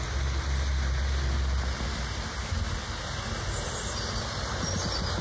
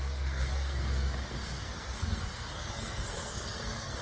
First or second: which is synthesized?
second